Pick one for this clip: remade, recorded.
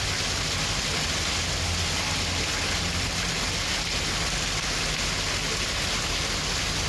recorded